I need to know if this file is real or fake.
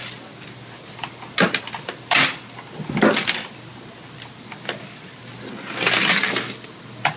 real